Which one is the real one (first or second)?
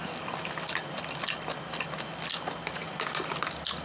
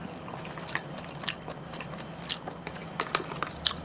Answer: first